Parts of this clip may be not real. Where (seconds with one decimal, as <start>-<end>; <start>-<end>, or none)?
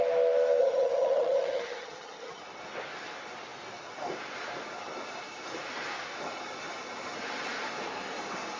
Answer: 0.6-2.4